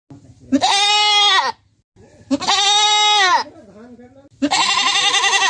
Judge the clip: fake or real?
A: real